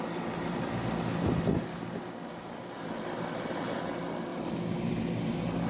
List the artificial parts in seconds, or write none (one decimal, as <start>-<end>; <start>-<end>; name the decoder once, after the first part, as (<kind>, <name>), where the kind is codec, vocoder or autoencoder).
1.7-2.7 (codec, DAC)